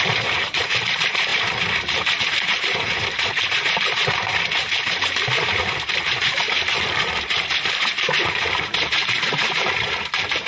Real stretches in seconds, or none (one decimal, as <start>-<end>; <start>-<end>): none